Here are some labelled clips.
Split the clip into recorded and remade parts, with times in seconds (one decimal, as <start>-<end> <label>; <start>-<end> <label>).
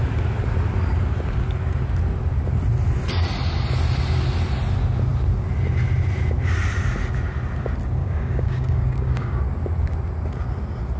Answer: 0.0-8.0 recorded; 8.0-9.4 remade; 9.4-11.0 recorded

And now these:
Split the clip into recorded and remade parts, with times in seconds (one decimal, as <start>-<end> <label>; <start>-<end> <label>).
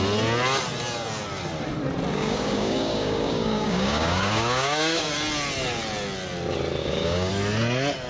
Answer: 0.0-2.1 recorded; 2.1-5.1 remade; 5.1-6.8 recorded; 6.8-7.3 remade; 7.3-8.1 recorded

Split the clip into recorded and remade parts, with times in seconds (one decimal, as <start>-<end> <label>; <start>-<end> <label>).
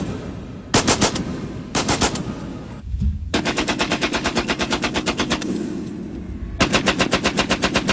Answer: 0.0-1.3 recorded; 1.3-2.0 remade; 2.0-2.5 recorded; 2.5-5.9 remade; 5.9-7.9 recorded